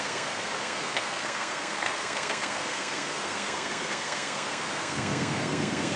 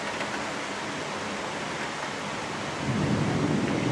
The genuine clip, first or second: second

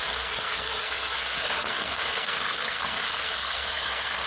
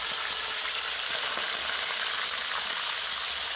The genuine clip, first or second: second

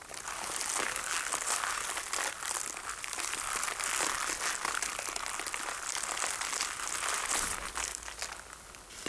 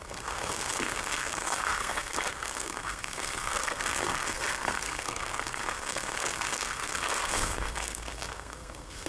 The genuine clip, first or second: first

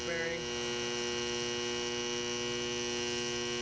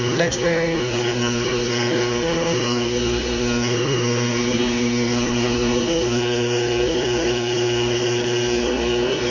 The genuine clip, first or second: first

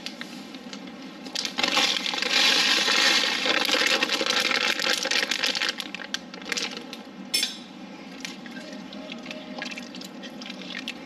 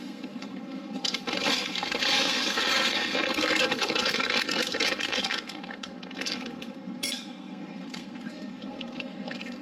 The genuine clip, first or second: first